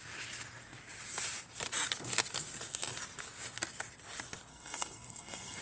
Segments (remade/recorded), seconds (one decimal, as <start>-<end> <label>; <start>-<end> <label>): 0.0-4.5 recorded; 4.5-5.6 remade